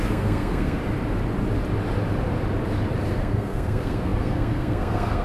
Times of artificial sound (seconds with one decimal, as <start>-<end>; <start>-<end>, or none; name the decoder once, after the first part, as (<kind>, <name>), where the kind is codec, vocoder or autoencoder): 0.0-0.8 (codec, SNAC); 3.1-5.2